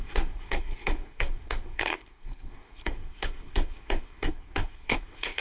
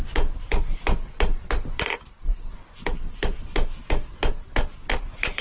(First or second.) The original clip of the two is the second